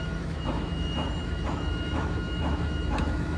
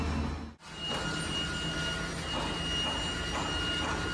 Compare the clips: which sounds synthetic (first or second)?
first